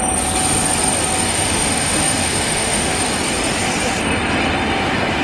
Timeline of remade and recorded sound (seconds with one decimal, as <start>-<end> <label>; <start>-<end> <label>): 0.0-1.3 recorded; 1.3-3.1 remade; 3.1-5.2 recorded

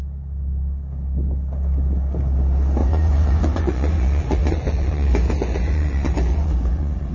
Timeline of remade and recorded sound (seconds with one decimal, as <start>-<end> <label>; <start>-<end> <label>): 0.0-2.8 recorded; 2.8-7.1 remade

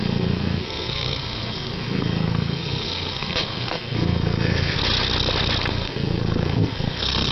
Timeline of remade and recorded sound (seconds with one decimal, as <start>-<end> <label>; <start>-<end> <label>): 0.0-4.8 remade; 4.8-5.7 recorded; 5.7-7.3 remade

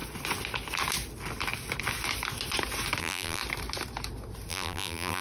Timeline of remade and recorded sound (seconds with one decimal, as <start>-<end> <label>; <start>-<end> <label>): 0.0-3.0 recorded; 3.0-3.4 remade; 3.4-4.5 recorded; 4.5-5.2 remade

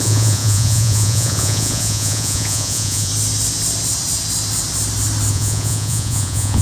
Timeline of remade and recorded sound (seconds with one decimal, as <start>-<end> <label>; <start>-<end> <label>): 0.0-3.1 remade; 3.1-5.3 recorded; 5.3-6.6 remade

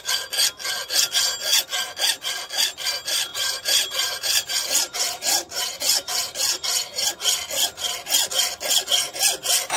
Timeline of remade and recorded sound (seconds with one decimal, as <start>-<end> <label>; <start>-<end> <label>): 0.0-3.3 recorded; 3.3-7.1 remade; 7.1-9.8 recorded

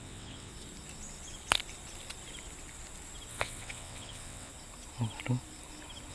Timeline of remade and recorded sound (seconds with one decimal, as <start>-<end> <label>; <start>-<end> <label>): 0.0-0.5 remade; 0.5-3.3 recorded; 3.3-4.5 remade; 4.5-6.1 recorded